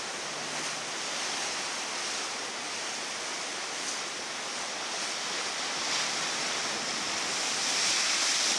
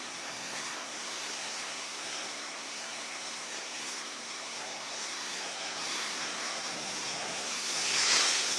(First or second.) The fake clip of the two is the second